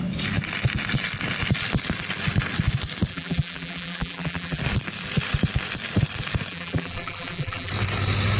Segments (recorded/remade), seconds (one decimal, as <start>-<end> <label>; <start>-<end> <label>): 0.0-3.1 recorded; 3.1-4.6 remade; 4.6-6.5 recorded; 6.5-7.7 remade; 7.7-8.4 recorded